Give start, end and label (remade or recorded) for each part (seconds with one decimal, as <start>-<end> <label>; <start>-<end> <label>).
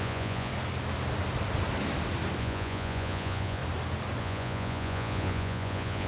0.0-0.5 remade; 0.5-2.4 recorded; 2.4-3.6 remade; 3.6-4.2 recorded; 4.2-6.1 remade